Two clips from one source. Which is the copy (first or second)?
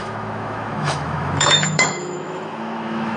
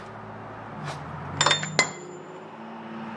first